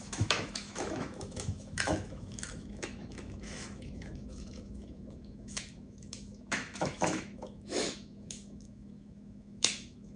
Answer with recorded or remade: remade